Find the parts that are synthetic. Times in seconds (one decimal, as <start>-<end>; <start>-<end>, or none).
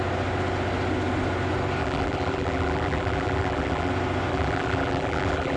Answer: 1.8-3.9; 4.3-5.6